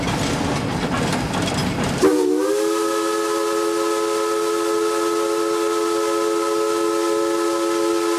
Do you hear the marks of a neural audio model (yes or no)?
no